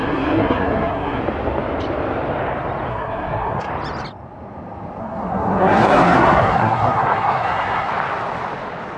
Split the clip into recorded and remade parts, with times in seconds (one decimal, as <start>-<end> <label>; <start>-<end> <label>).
0.0-1.2 remade; 1.2-2.9 recorded; 2.9-3.7 remade; 3.7-5.0 recorded; 5.0-7.9 remade; 7.9-9.0 recorded